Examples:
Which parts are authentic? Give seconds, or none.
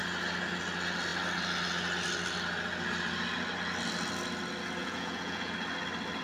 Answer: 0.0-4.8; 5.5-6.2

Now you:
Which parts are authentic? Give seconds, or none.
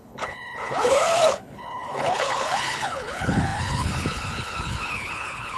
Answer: none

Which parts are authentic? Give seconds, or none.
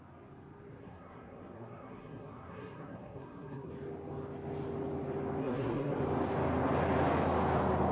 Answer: 0.0-0.8; 3.7-5.4; 6.0-7.9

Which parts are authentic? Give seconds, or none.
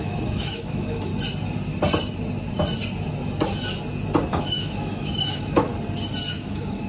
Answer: 1.1-4.3; 5.7-6.3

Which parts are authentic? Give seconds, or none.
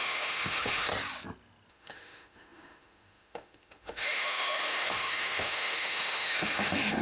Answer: 0.9-1.7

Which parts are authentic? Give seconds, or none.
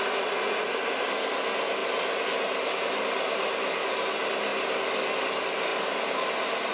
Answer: 0.0-6.7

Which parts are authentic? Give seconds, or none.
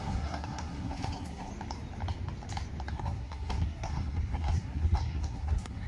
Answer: 1.5-2.9